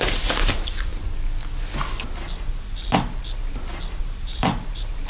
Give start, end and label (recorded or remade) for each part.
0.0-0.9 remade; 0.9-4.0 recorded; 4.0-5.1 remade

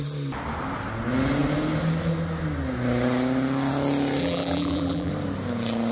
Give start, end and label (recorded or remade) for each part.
0.0-4.2 recorded; 4.2-5.1 remade; 5.1-5.9 recorded